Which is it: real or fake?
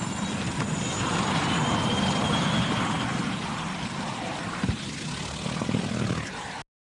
real